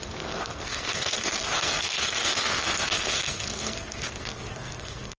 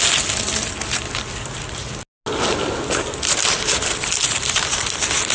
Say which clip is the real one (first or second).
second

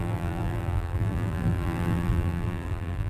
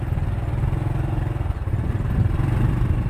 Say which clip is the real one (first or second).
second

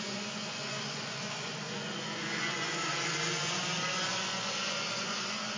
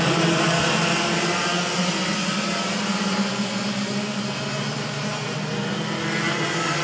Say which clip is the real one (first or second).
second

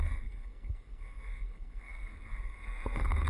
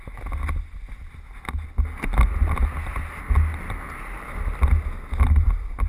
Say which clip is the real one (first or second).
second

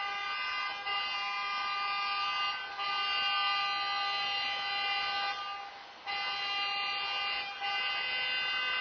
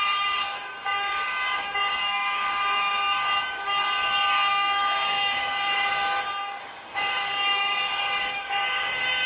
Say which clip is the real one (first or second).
first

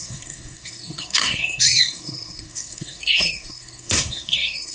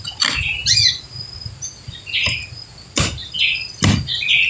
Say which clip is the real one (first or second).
second